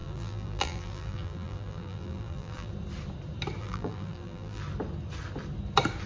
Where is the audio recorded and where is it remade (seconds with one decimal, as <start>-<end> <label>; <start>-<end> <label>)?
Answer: 0.0-2.7 remade; 2.7-3.6 recorded; 3.6-4.6 remade; 4.6-6.1 recorded